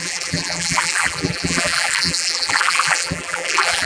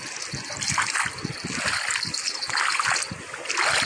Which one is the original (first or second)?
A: second